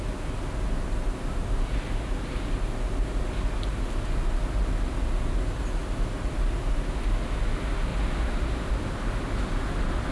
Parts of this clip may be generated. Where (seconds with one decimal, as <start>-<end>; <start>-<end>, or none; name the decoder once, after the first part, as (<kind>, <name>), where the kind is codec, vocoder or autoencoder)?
7.9-8.7 (vocoder, BigVGAN v2)